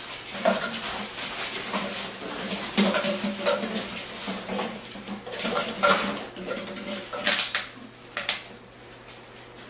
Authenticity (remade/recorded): recorded